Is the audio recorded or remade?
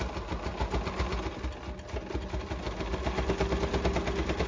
recorded